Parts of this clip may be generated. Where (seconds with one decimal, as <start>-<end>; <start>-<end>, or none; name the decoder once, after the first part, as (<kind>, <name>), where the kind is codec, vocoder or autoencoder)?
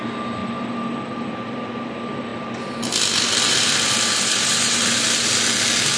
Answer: none